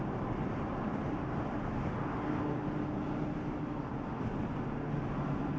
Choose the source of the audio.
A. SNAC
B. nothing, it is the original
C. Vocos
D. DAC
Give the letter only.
B